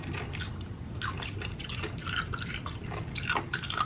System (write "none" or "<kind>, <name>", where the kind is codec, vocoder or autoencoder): none